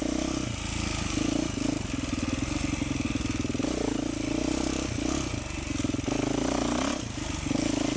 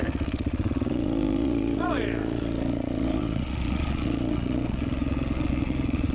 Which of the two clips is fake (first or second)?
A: second